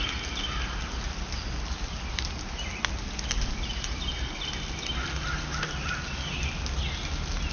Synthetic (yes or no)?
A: no